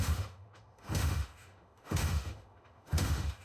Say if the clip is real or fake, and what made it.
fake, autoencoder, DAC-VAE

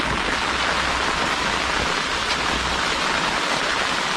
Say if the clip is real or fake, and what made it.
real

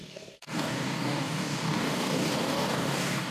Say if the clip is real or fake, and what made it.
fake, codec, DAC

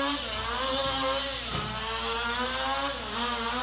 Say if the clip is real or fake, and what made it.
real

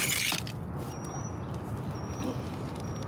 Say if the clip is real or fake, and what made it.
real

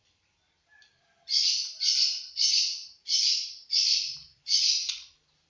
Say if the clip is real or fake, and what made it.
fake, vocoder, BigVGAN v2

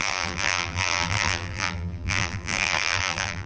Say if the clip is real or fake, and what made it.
fake, vocoder, BigVGAN v2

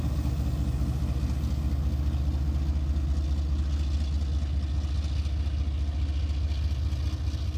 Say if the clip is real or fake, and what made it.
real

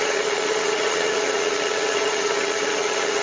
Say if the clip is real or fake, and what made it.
fake, vocoder, HiFi-GAN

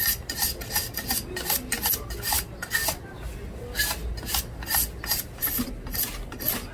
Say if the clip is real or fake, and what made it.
real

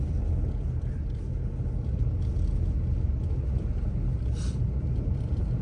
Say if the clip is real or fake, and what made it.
real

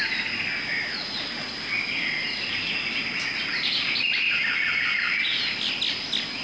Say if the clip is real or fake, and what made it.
real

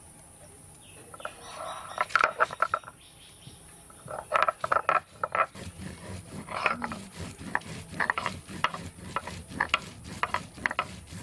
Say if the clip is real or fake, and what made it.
real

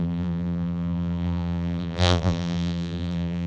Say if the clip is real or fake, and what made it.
fake, vocoder, BigVGAN v2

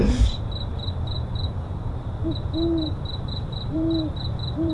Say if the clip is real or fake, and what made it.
fake, vocoder, BigVGAN v2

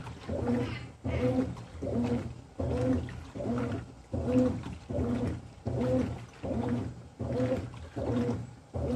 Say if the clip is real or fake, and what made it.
real